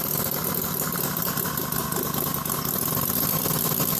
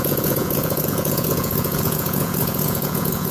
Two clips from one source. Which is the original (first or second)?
first